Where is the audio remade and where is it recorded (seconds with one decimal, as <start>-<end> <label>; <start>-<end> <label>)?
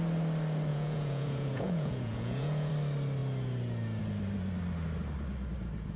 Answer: 0.0-0.7 recorded; 0.7-2.7 remade; 2.7-6.0 recorded